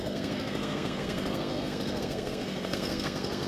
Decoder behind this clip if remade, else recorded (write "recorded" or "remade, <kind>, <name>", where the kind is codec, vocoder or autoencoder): remade, codec, SNAC